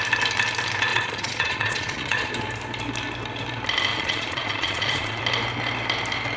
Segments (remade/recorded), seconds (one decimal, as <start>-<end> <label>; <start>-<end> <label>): 0.0-0.9 recorded; 0.9-2.3 remade; 2.3-3.9 recorded; 3.9-5.2 remade; 5.2-6.4 recorded